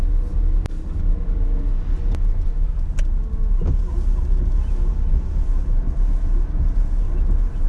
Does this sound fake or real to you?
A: real